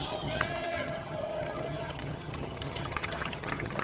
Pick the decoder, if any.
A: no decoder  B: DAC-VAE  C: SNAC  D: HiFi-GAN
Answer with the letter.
D